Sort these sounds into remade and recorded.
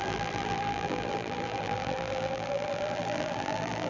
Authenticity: remade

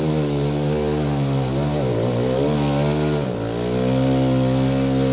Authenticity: recorded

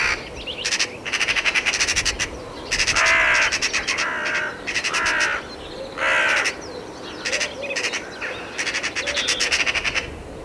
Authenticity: recorded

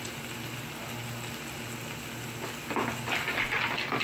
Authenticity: recorded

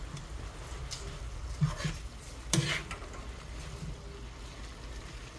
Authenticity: recorded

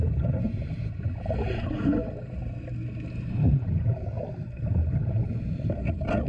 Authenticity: recorded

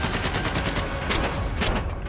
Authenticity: recorded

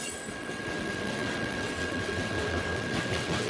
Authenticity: remade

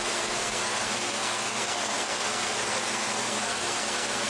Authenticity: remade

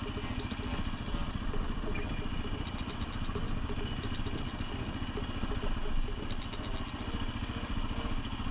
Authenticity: recorded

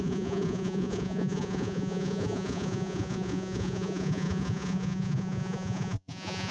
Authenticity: remade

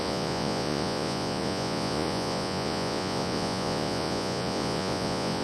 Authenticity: remade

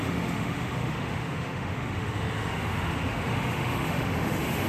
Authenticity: remade